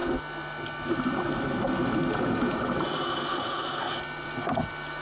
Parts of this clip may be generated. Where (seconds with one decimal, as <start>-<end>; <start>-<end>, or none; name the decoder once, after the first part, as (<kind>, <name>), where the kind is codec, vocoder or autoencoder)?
none